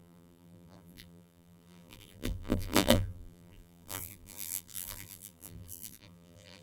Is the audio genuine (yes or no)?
no